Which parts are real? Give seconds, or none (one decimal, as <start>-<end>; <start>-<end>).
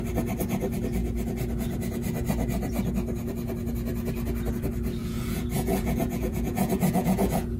0.0-5.0